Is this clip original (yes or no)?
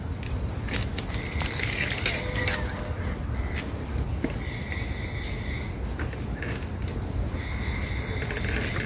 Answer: yes